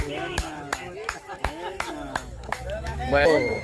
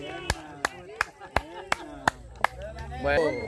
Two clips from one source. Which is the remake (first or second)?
first